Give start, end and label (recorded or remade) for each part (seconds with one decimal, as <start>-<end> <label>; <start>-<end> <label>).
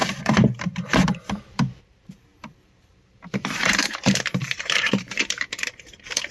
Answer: 0.0-6.3 remade